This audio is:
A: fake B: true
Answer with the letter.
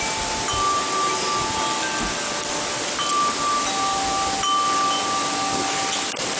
B